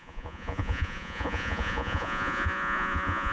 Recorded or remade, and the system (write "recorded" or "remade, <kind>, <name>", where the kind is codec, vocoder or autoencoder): remade, vocoder, Vocos